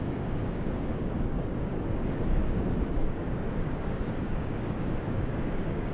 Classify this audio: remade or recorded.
remade